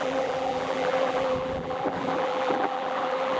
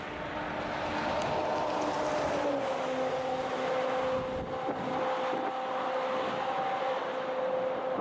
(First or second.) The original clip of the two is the second